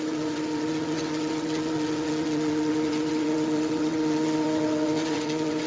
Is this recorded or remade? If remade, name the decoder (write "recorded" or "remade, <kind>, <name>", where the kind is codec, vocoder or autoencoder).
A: remade, vocoder, WaveNeXt